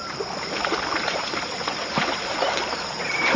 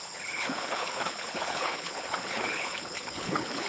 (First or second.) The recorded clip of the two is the first